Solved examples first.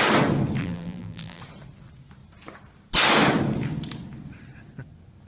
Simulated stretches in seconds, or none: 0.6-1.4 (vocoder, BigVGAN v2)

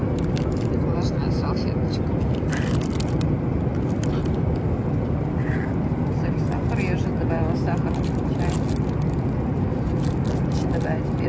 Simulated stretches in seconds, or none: none